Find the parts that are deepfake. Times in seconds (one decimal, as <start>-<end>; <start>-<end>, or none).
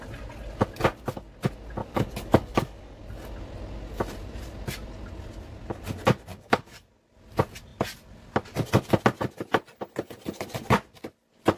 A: 1.8-3.0; 6.3-6.9